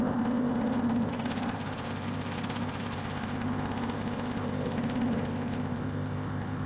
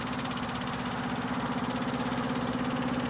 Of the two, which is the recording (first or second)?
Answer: second